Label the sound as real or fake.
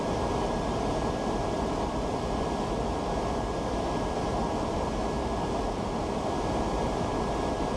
real